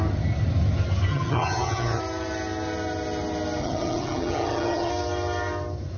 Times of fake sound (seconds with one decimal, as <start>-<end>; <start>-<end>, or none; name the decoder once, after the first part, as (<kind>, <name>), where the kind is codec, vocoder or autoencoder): 1.1-2.0 (vocoder, HiFi-GAN); 3.6-4.9